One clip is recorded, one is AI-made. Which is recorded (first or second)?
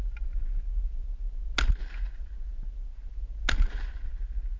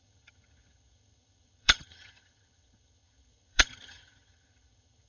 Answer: first